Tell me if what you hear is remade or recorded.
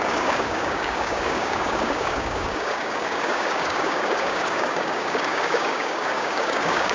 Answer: remade